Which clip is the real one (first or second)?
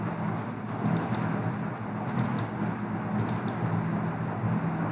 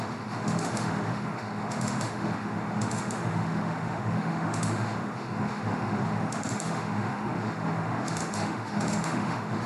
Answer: first